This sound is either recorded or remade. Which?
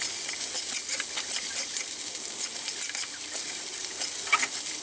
recorded